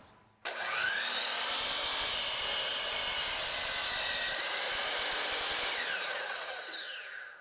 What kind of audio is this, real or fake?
real